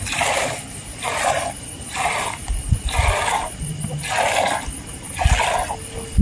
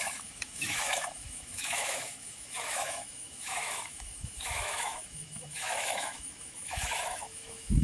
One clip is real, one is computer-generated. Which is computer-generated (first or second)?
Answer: second